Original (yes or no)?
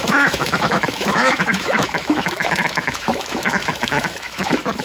no